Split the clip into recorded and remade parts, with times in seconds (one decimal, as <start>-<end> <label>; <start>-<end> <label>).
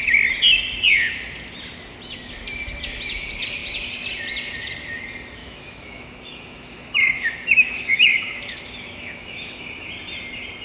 0.0-5.4 recorded; 5.4-9.6 remade; 9.6-10.6 recorded